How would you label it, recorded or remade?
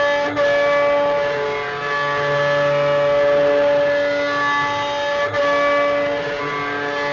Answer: recorded